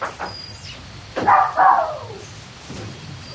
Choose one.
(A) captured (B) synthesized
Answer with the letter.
A